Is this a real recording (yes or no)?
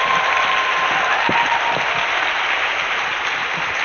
yes